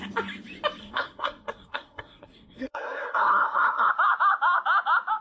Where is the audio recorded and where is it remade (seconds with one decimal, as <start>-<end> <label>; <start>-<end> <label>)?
0.0-0.8 recorded; 0.8-3.9 remade; 3.9-5.2 recorded